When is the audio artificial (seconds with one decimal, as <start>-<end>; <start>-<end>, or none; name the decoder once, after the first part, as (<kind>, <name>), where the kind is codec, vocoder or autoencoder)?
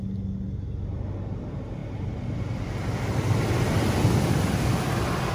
none